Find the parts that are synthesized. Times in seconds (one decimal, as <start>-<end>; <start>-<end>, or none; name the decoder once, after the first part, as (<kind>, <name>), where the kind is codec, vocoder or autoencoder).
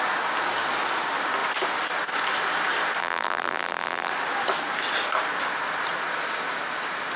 3.0-4.1 (vocoder, BigVGAN v2)